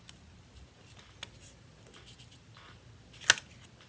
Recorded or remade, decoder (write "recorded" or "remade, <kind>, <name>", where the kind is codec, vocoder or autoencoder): recorded